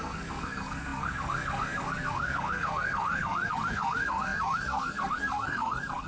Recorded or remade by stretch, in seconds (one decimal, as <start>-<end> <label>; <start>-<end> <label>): 0.0-6.1 remade